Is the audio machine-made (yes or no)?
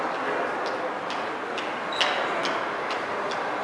no